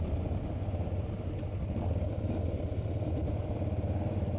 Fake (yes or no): no